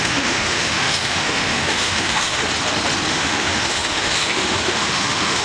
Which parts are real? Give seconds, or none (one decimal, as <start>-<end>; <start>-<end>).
2.4-3.1

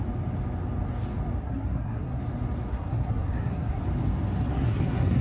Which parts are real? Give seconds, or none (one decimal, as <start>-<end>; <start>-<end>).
0.0-1.4; 2.2-2.7; 3.8-4.5

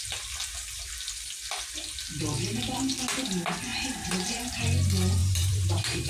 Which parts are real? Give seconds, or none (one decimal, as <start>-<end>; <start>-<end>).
0.0-3.7; 4.6-5.2

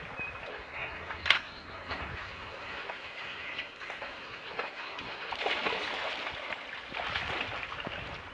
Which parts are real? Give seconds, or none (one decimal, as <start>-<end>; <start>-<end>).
0.0-0.5; 5.3-8.3

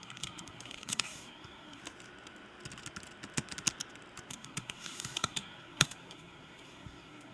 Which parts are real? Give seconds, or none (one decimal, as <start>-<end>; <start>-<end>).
1.8-4.3

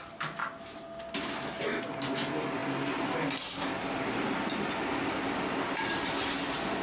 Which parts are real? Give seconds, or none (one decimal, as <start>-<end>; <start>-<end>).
0.0-6.8